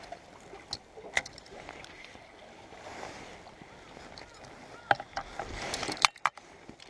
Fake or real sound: real